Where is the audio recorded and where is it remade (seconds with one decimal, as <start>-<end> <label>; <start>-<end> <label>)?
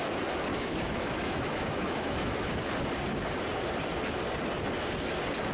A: 0.0-0.5 recorded; 0.5-2.6 remade; 2.6-5.5 recorded